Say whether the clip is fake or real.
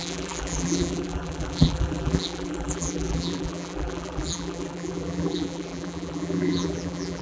fake